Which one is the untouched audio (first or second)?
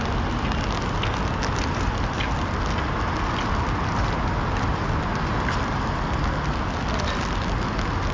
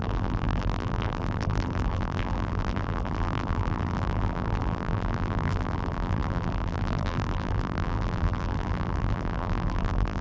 first